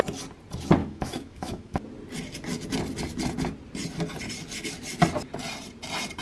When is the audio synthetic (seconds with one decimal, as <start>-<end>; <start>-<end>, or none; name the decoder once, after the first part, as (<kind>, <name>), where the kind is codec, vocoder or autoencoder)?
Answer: 0.8-1.8 (autoencoder, DAC-VAE)